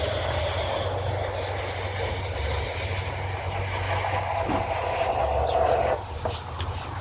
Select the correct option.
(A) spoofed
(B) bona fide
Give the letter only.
B